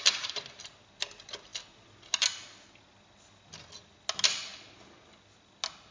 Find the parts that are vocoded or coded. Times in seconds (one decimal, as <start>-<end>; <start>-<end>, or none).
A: none